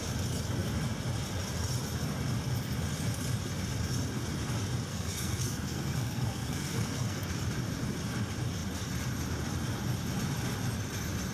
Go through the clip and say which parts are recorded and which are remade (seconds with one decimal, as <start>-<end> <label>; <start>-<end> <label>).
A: 0.0-4.9 recorded; 4.9-7.3 remade; 7.3-11.3 recorded